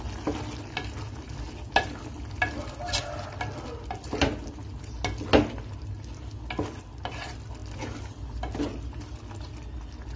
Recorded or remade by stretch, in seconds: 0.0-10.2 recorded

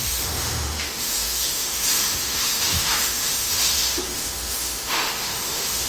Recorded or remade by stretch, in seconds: 0.0-5.9 remade